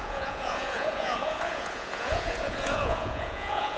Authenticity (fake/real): fake